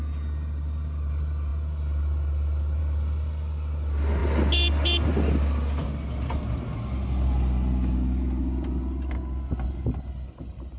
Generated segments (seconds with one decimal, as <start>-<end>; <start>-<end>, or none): none